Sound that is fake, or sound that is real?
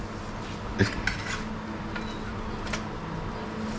real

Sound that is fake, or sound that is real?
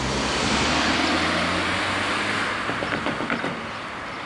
real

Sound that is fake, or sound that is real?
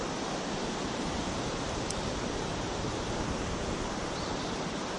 real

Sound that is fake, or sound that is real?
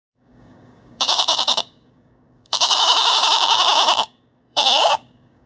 fake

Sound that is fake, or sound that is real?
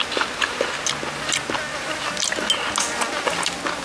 real